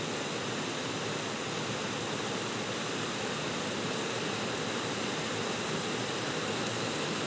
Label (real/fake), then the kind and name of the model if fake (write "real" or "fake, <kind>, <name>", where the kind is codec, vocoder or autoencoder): real